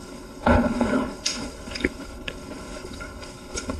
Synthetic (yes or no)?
yes